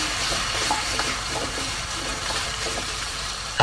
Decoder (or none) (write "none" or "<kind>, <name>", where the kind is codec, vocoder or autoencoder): vocoder, BigVGAN v2